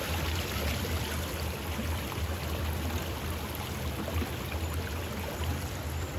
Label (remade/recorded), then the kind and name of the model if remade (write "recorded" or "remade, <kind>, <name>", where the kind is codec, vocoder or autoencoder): recorded